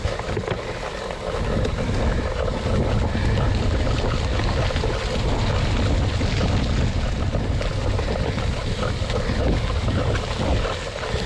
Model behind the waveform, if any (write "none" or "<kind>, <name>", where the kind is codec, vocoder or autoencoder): none